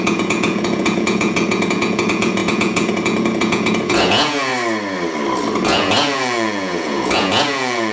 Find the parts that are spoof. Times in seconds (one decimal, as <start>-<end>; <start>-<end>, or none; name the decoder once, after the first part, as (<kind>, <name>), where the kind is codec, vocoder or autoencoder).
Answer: 0.0-4.5 (vocoder, Vocos); 5.6-7.9